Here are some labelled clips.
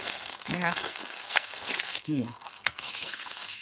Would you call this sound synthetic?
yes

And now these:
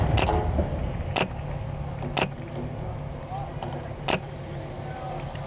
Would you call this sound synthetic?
no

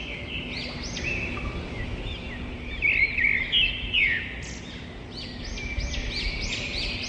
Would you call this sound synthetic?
no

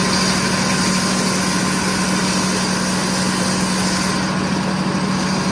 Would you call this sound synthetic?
no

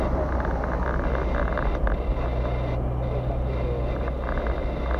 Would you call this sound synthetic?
no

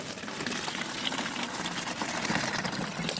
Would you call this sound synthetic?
no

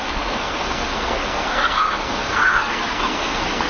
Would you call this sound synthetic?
yes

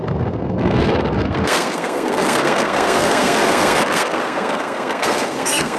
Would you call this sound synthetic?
yes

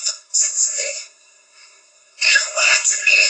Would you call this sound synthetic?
yes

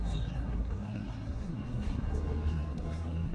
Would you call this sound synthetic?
yes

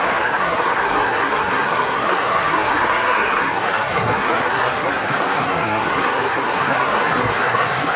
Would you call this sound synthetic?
yes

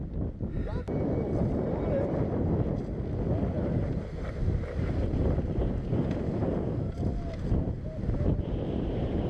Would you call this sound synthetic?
no